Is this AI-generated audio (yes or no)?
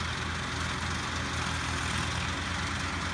no